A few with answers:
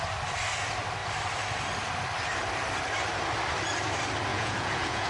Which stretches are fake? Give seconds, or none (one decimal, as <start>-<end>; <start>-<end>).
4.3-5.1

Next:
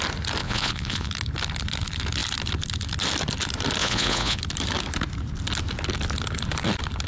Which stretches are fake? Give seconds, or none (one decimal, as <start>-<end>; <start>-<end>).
0.4-1.1; 3.8-4.4

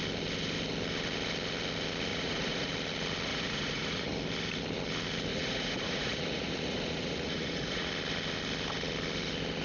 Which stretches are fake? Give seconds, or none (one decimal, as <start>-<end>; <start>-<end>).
2.1-2.7; 3.3-4.1; 5.3-7.9